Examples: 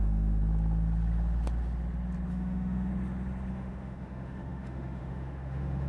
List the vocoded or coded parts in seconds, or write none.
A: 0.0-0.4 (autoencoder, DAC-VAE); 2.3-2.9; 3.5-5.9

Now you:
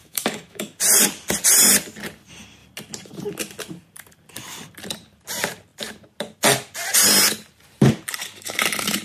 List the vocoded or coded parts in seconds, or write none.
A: 0.0-0.8 (autoencoder, DAC-VAE)

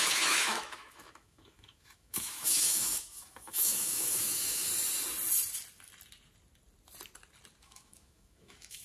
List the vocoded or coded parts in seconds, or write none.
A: 0.0-4.7 (autoencoder, DAC-VAE); 7.6-8.8

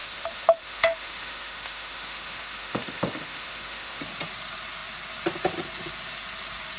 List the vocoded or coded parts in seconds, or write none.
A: 0.0-4.0 (autoencoder, DAC-VAE)

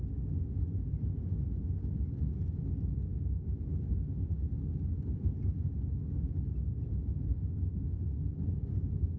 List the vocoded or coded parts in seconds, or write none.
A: 3.1-4.5 (autoencoder, DAC-VAE); 7.1-8.1

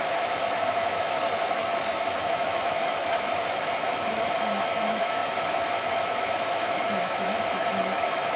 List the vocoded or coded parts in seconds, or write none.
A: 0.0-8.4 (autoencoder, DAC-VAE)

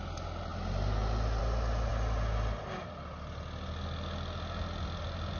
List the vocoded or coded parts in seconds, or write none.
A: none

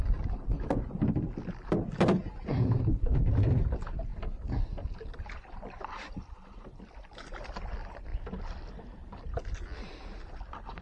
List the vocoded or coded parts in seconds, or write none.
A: none